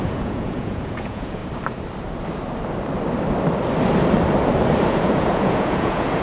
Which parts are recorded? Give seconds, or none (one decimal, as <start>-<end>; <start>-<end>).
1.4-4.9

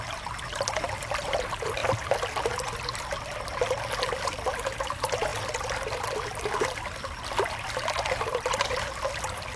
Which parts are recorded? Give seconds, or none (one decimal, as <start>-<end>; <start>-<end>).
0.0-9.6

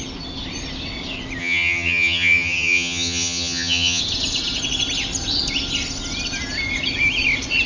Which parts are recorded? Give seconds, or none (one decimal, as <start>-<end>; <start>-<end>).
0.0-1.4; 4.0-7.7

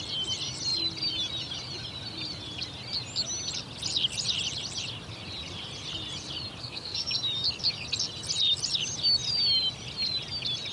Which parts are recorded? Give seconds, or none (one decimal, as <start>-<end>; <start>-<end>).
0.0-6.6; 7.1-10.7

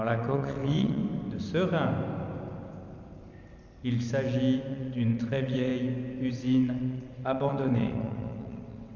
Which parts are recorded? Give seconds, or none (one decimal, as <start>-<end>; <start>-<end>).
1.0-4.7; 5.7-6.3

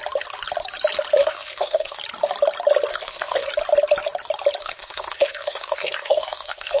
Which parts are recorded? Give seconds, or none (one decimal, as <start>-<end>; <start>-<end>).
0.0-1.2; 2.0-2.9; 3.5-4.6

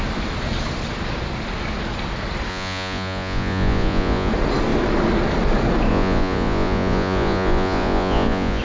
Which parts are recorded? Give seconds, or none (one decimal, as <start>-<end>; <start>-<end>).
0.0-2.5; 4.3-5.9